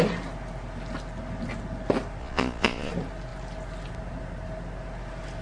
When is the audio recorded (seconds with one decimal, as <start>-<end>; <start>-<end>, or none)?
0.0-2.2; 2.9-5.4